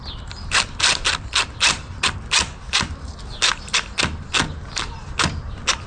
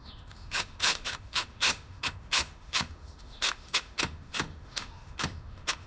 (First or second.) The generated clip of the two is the second